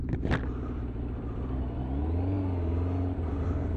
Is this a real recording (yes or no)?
yes